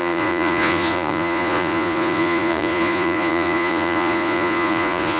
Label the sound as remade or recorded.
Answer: remade